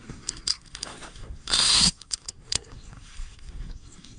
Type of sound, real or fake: fake